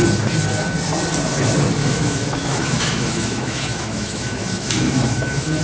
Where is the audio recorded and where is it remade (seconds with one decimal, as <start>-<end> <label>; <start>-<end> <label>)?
0.0-1.8 recorded; 1.8-5.6 remade